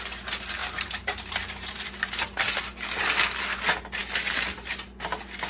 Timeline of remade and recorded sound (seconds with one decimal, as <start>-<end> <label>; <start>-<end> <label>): 0.0-0.6 recorded; 0.6-3.0 remade; 3.0-5.5 recorded